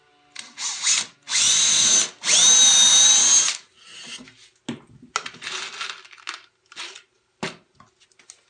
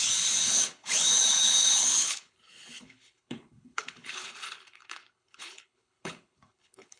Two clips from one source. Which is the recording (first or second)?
first